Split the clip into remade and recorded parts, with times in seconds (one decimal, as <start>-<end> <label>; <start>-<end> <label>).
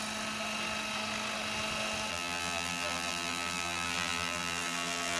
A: 0.0-2.1 recorded; 2.1-5.2 remade